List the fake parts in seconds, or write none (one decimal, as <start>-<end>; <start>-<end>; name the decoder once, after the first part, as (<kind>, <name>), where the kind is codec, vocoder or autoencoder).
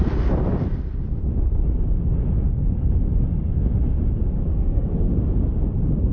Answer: 4.5-5.1 (codec, SNAC)